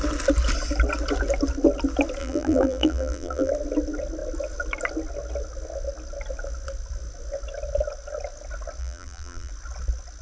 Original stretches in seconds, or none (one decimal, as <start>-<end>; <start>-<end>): 0.0-2.2; 3.5-8.8; 9.5-10.2